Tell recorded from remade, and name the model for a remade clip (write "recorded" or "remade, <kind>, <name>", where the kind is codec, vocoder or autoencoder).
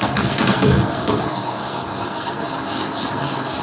remade, codec, SNAC